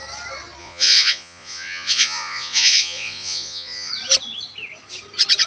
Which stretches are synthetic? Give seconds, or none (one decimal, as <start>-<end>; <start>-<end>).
0.6-3.9